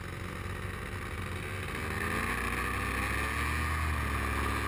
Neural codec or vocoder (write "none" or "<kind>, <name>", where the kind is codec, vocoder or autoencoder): none